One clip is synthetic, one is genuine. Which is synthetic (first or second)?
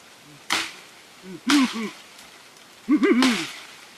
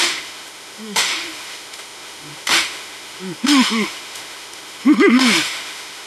second